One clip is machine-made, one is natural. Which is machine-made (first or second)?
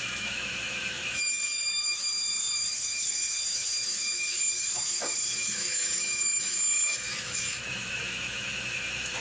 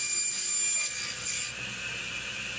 first